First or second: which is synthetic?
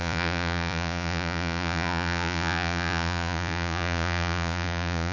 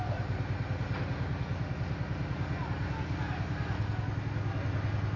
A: first